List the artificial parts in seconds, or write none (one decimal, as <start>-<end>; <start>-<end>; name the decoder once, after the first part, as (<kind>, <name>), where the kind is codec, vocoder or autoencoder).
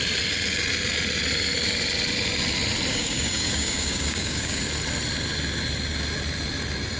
2.9-4.6 (codec, DAC)